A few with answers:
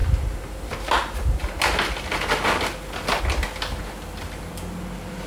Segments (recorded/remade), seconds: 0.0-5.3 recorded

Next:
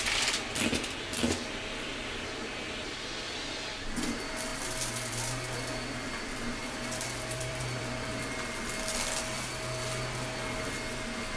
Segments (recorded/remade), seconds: 0.0-6.6 recorded; 6.6-8.1 remade; 8.1-11.4 recorded